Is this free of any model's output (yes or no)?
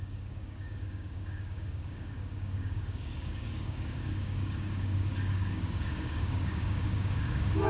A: no